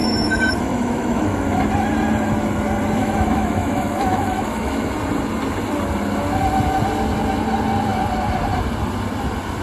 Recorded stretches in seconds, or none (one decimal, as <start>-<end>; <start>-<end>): 1.7-3.0; 4.9-9.6